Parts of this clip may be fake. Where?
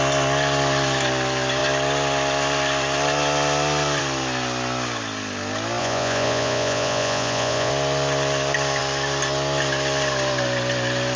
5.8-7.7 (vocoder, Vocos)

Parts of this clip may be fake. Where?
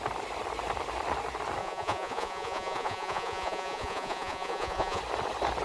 1.6-5.0 (vocoder, Vocos)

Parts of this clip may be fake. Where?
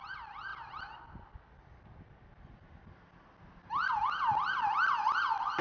none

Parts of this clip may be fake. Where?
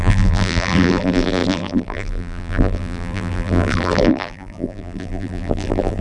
0.0-6.0 (vocoder, BigVGAN v2)